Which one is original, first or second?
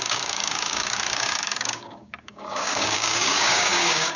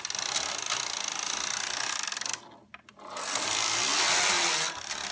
second